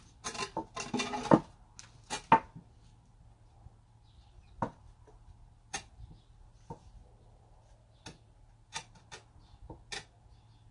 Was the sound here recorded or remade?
recorded